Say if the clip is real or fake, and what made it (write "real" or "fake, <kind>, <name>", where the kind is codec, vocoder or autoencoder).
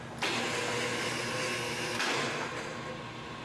real